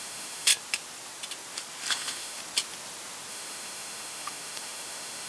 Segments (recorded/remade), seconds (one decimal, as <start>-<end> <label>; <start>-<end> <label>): 0.0-0.5 remade; 0.5-1.9 recorded; 1.9-2.4 remade; 2.4-3.3 recorded; 3.3-5.3 remade